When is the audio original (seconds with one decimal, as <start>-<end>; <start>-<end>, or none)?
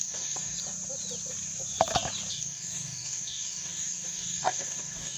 0.6-2.3